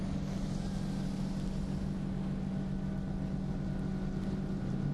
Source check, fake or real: real